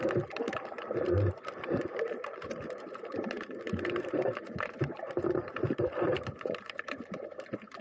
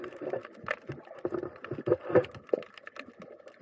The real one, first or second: second